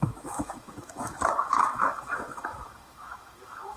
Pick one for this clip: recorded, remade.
remade